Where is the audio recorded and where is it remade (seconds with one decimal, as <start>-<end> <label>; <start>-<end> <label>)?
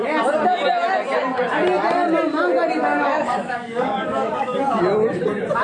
0.0-2.9 recorded; 2.9-4.8 remade; 4.8-5.6 recorded